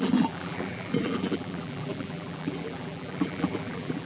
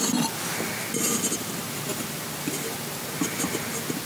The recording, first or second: second